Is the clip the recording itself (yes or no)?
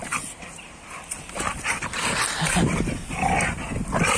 yes